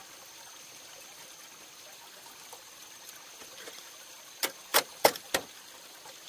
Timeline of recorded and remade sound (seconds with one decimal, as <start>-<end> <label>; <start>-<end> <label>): 0.0-4.7 recorded; 4.7-5.3 remade; 5.3-6.3 recorded